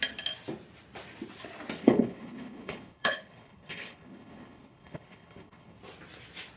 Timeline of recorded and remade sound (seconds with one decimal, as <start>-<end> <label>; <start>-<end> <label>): 0.0-1.8 recorded; 1.8-5.8 remade; 5.8-6.6 recorded